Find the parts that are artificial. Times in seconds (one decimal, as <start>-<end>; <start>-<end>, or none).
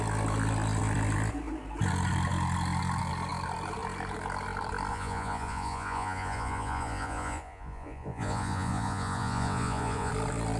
4.9-10.1